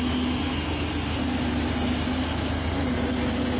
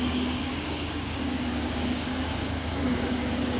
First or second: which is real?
first